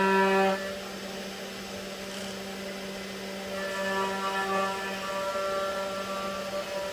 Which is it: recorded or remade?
recorded